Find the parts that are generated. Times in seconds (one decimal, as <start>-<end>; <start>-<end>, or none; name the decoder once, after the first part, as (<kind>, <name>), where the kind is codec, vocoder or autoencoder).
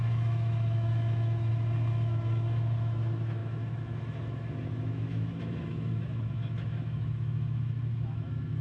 0.0-1.5 (autoencoder, DAC-VAE); 2.1-8.6